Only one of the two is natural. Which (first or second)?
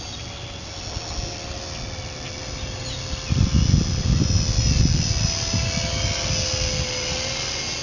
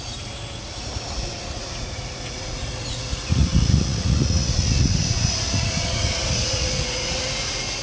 first